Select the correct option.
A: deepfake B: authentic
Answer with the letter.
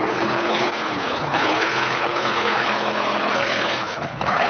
A